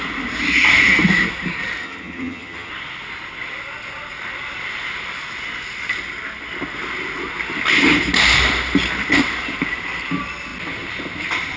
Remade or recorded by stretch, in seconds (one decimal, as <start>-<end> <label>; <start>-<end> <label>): 0.0-1.8 recorded; 1.8-2.7 remade; 2.7-11.6 recorded

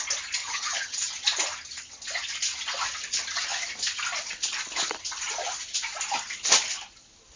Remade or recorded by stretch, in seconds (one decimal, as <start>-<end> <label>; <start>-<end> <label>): 0.0-0.4 recorded; 0.4-1.1 remade; 1.1-7.4 recorded

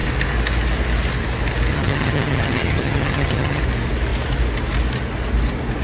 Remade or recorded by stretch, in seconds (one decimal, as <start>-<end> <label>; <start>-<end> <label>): 0.0-1.7 recorded; 1.7-3.6 remade; 3.6-5.8 recorded

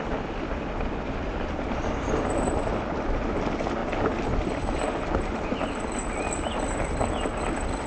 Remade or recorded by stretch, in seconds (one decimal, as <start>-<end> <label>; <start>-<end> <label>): 0.0-7.9 recorded

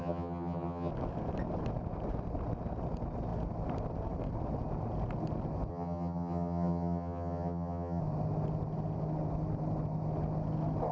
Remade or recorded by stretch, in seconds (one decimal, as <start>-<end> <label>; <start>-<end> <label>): 0.0-0.9 remade; 0.9-5.7 recorded; 5.7-8.0 remade; 8.0-10.9 recorded

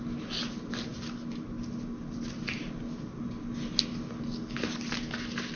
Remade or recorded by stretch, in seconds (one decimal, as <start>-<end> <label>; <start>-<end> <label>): 0.0-5.5 recorded

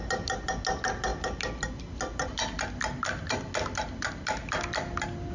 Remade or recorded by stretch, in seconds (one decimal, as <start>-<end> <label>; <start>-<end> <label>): 0.0-5.3 recorded